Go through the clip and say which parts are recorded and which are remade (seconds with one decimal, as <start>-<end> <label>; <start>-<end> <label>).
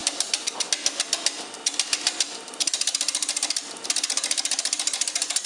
0.0-0.7 remade; 0.7-5.5 recorded